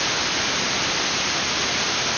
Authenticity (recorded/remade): recorded